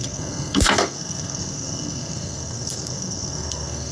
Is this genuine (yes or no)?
no